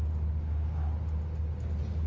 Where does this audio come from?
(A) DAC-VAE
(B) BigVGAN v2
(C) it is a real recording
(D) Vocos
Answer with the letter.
C